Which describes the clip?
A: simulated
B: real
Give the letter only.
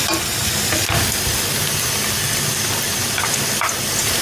B